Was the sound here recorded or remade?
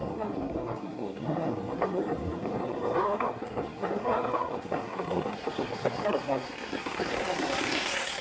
remade